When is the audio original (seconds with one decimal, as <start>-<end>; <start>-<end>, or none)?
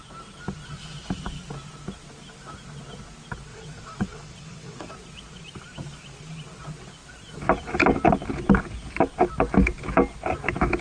0.0-3.5; 4.9-10.8